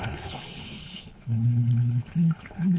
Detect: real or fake fake